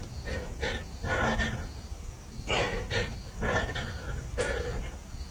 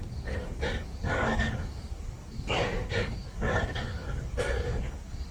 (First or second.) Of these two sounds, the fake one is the second